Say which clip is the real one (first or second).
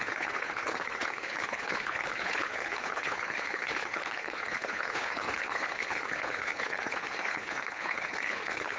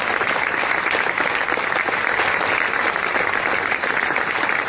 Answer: second